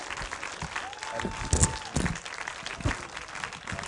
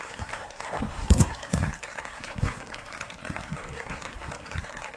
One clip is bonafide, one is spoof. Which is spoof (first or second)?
second